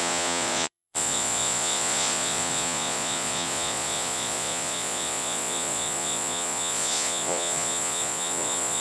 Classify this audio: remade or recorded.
remade